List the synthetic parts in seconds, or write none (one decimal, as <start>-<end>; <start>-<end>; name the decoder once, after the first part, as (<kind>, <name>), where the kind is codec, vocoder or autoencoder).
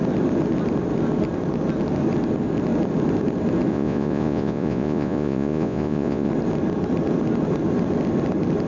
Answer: 3.7-6.3 (vocoder, Vocos)